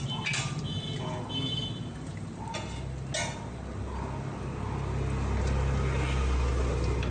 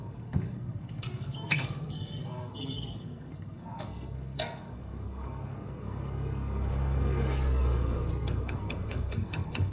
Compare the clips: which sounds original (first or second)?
first